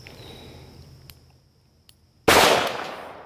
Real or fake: real